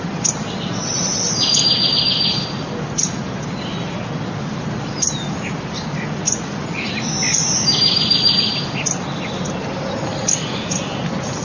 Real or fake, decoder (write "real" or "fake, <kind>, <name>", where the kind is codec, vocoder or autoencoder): real